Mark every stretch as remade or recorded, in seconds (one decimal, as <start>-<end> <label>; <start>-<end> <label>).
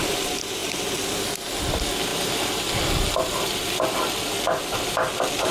0.0-5.5 recorded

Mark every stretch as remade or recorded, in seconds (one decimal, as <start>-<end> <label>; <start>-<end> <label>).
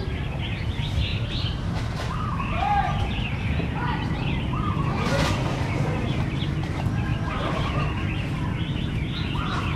0.0-1.1 recorded; 1.1-4.7 remade; 4.7-7.1 recorded; 7.1-7.7 remade; 7.7-9.8 recorded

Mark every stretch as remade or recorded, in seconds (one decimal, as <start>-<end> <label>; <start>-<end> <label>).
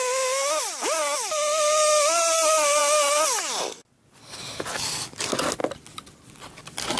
0.0-7.0 recorded